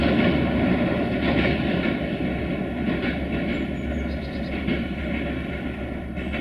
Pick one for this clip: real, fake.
real